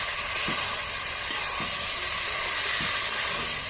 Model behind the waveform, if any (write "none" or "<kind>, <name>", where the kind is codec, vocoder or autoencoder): none